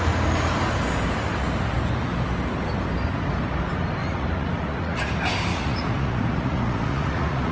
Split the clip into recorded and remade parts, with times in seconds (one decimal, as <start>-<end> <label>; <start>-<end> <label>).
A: 0.0-4.0 recorded; 4.0-5.1 remade; 5.1-5.5 recorded; 5.5-7.5 remade